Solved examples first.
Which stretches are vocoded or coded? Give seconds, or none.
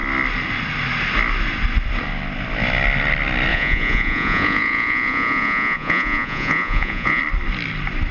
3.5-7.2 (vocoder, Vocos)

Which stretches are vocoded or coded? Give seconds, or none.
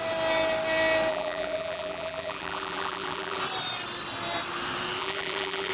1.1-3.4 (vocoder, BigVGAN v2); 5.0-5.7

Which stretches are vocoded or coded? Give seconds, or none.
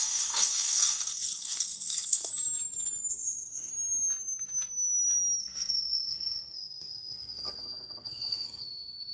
0.0-2.3 (codec, SNAC); 3.1-3.7; 5.4-9.1